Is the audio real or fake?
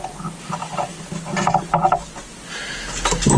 real